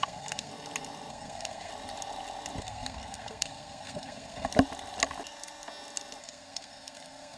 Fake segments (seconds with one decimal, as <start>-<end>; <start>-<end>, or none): 0.0-0.5; 1.1-1.7; 2.6-4.5; 6.2-7.4